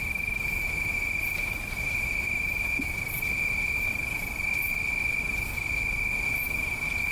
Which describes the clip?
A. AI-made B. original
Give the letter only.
B